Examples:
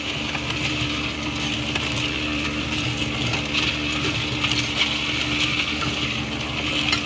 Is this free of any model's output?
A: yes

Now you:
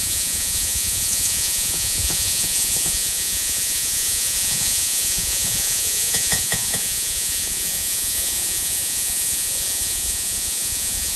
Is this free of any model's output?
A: no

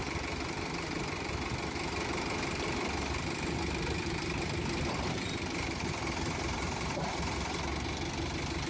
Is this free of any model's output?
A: yes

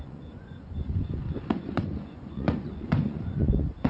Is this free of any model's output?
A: no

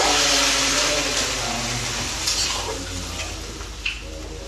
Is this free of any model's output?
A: yes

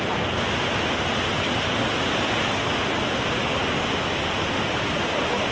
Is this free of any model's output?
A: yes